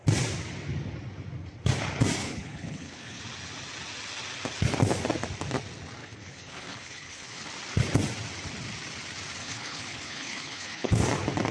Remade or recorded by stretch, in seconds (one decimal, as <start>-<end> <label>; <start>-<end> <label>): 0.0-2.2 recorded; 2.2-3.2 remade; 3.2-6.0 recorded; 6.0-7.5 remade; 7.5-9.4 recorded; 9.4-11.0 remade; 11.0-11.5 recorded